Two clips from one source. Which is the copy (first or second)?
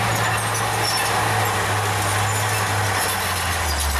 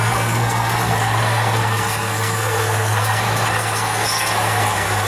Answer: second